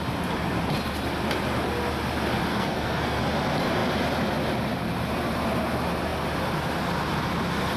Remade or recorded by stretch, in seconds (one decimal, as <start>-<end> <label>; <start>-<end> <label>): 0.0-2.5 recorded; 2.5-3.2 remade; 3.2-7.8 recorded